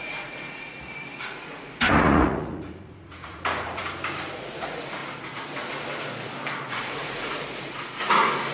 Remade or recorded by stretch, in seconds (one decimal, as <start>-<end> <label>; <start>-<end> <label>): 0.0-0.7 remade; 0.7-1.2 recorded; 1.2-3.8 remade; 3.8-4.4 recorded; 4.4-5.0 remade; 5.0-6.7 recorded; 6.7-8.5 remade